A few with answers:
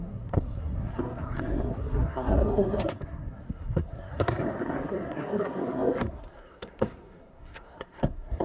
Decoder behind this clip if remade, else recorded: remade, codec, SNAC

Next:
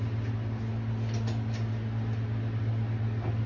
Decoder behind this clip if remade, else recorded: recorded